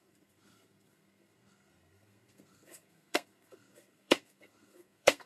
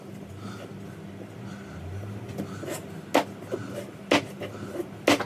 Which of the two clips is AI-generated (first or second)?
first